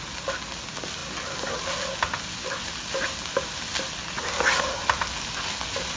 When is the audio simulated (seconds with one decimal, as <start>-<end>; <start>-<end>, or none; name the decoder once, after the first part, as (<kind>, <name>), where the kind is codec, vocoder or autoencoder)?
none